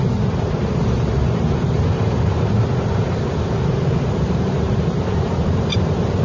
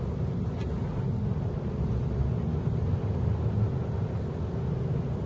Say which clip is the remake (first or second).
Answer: first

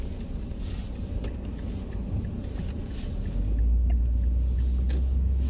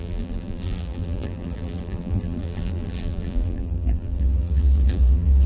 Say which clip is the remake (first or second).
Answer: second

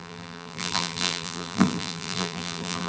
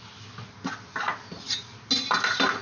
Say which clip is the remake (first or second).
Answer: first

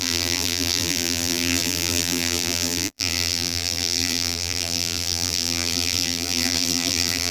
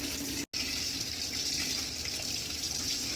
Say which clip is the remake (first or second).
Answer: first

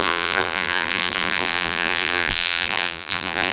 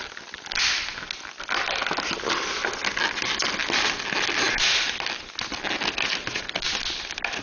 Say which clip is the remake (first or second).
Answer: first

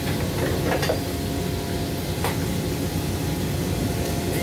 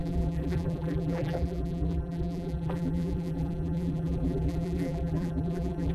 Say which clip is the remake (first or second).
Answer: second